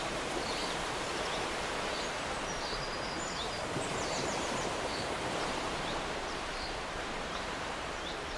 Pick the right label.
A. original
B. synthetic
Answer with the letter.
B